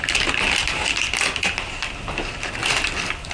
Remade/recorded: recorded